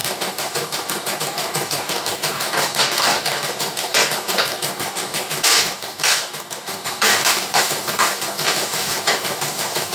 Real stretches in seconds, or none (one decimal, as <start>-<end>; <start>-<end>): none